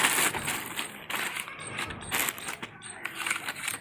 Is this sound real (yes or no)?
yes